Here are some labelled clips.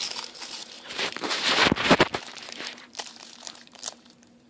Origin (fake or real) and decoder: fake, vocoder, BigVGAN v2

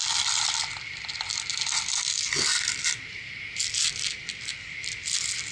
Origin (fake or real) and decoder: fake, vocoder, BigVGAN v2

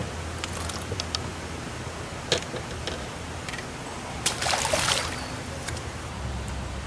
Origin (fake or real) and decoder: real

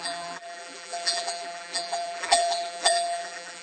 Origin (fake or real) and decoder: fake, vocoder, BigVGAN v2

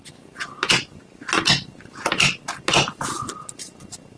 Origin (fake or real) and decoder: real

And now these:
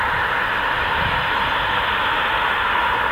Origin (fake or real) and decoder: real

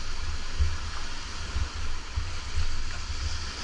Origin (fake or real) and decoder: real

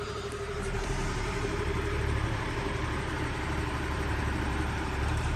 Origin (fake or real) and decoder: fake, vocoder, BigVGAN v2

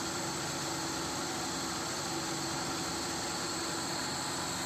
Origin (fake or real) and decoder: real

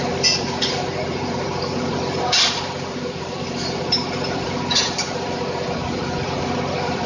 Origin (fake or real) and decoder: fake, vocoder, BigVGAN v2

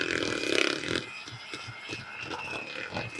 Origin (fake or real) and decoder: fake, vocoder, BigVGAN v2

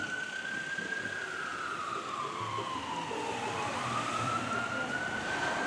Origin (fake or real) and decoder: fake, vocoder, BigVGAN v2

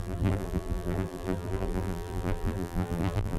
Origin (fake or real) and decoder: fake, vocoder, BigVGAN v2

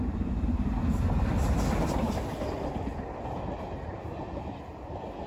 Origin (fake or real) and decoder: real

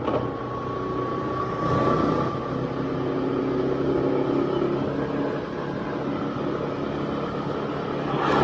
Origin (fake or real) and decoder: real